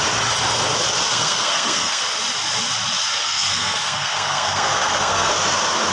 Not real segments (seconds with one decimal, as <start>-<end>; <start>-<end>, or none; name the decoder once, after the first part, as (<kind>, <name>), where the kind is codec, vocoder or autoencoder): 1.1-2.0 (codec, SNAC); 3.2-5.3